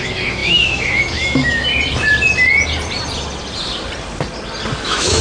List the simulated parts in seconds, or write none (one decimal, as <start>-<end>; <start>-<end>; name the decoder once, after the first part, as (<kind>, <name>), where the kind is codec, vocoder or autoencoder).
0.0-1.7 (autoencoder, DAC-VAE); 4.8-5.2